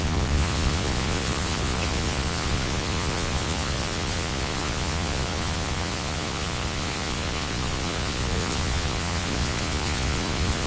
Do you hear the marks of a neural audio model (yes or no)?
yes